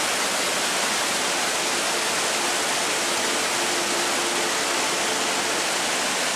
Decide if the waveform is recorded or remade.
recorded